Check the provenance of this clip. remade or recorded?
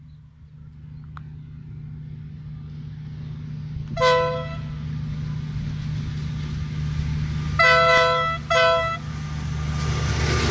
recorded